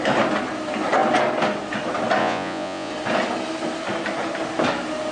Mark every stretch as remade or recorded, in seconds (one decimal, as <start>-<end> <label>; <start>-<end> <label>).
0.0-2.2 recorded; 2.2-2.9 remade; 2.9-5.1 recorded